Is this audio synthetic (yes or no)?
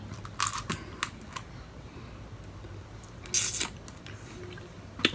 no